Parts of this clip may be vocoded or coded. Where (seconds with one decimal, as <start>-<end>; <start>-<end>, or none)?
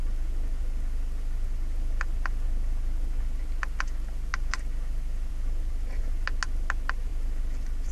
none